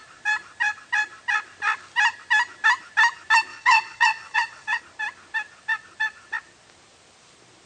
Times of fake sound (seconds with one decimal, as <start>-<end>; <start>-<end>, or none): 3.5-4.8